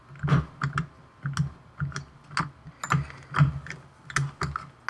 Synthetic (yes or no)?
no